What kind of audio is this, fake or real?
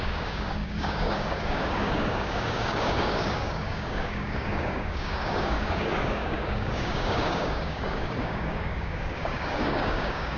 fake